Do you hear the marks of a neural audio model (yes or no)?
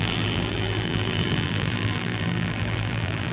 yes